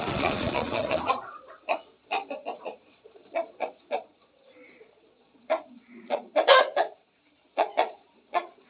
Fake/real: fake